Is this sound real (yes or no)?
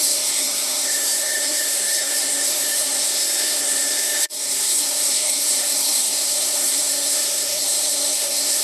no